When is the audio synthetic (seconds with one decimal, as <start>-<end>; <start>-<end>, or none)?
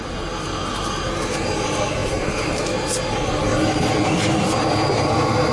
none